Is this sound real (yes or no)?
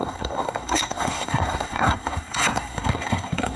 no